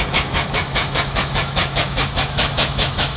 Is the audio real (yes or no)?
no